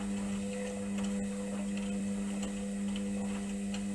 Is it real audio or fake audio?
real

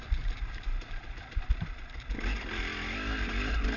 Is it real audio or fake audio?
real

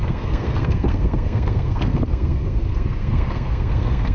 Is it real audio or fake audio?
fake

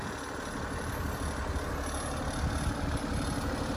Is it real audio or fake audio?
real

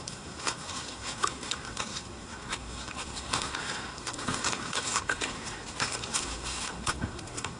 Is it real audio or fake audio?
fake